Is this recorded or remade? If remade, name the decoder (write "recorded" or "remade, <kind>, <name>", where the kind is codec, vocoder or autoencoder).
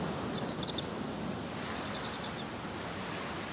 recorded